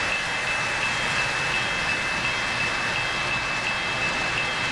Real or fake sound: real